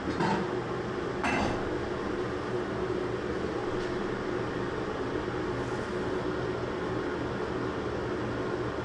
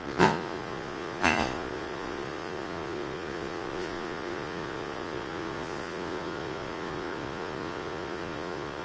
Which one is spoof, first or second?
second